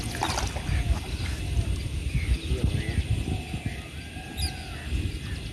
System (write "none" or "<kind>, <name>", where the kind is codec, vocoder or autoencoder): none